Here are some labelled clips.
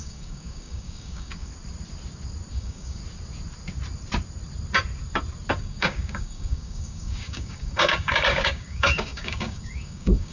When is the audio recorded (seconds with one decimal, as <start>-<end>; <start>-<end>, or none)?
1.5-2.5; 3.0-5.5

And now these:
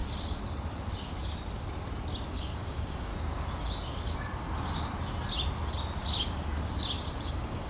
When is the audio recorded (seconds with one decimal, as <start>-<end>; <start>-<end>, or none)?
0.0-2.3; 3.1-7.3

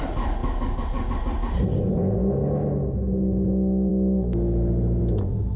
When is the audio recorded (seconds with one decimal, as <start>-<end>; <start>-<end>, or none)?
0.0-0.4; 1.1-3.9; 5.0-5.6

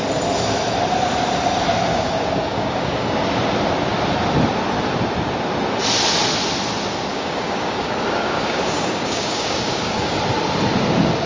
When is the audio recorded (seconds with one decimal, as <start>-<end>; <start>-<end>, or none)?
0.0-1.9; 3.1-7.1; 10.2-11.3